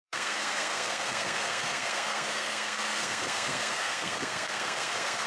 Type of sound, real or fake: fake